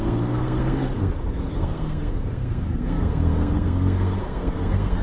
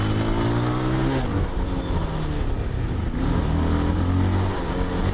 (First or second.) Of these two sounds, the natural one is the second